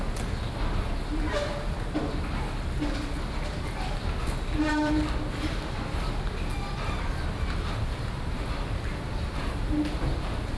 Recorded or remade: recorded